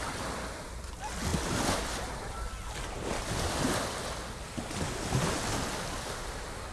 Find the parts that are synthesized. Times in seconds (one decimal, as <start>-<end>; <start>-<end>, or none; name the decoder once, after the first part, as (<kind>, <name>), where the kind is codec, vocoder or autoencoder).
none